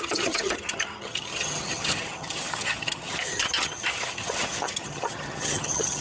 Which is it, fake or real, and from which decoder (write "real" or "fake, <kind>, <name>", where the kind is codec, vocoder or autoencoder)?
fake, vocoder, HiFi-GAN